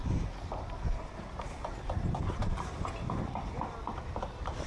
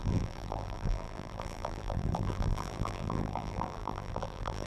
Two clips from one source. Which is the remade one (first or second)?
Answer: second